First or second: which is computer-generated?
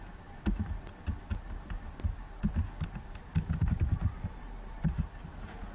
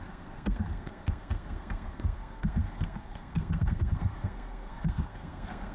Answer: second